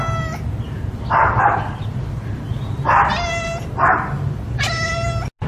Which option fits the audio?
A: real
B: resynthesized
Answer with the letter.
A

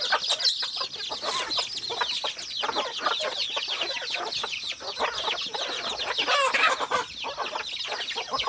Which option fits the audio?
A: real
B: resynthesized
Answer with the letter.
A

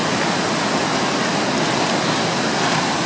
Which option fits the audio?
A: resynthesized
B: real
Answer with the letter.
B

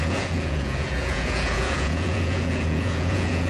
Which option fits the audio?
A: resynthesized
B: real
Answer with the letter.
A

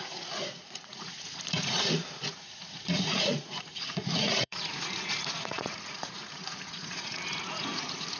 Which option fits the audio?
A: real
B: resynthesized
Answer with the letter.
B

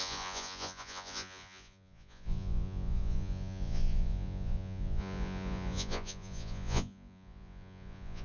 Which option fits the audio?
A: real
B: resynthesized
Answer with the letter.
B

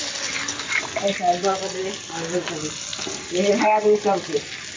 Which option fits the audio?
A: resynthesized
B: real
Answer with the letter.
B